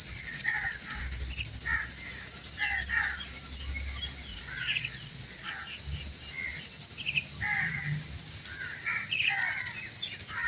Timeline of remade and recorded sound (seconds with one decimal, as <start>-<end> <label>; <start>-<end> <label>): 0.0-1.0 remade; 1.0-4.3 recorded; 4.3-5.5 remade; 5.5-10.5 recorded